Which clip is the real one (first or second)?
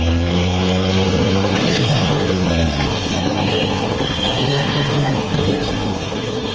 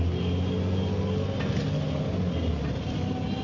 second